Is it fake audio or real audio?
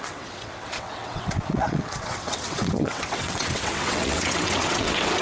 fake